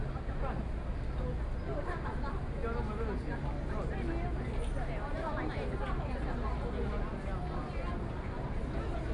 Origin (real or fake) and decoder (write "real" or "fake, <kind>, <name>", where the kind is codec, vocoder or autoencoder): real